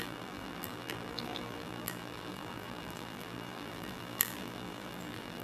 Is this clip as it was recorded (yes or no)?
no